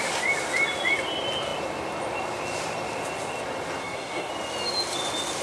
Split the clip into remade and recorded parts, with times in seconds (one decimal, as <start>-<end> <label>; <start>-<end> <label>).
0.0-3.8 recorded; 3.8-4.3 remade; 4.3-5.4 recorded